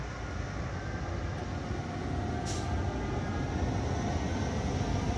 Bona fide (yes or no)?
yes